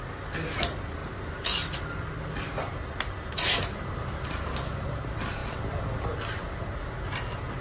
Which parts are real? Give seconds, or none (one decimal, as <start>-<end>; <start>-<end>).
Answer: 0.0-7.6